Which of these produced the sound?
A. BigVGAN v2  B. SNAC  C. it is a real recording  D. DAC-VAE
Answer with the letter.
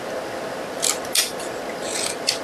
C